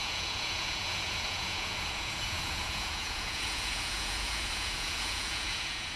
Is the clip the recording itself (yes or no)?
no